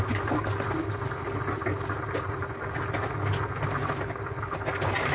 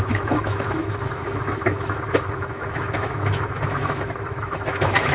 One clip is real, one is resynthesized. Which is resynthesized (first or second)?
second